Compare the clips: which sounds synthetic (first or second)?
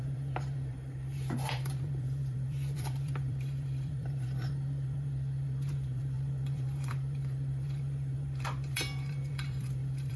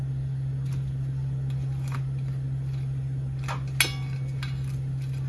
first